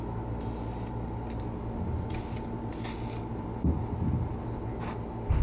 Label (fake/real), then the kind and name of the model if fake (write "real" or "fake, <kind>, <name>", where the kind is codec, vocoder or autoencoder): real